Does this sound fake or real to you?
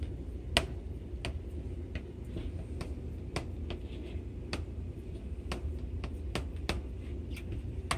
real